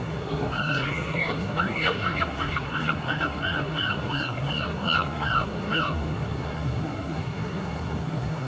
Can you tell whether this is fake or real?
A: fake